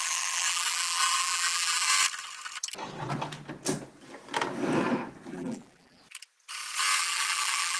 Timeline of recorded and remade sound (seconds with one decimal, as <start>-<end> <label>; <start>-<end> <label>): 0.0-1.9 remade; 1.9-5.3 recorded; 5.3-6.0 remade; 6.0-7.0 recorded; 7.0-7.8 remade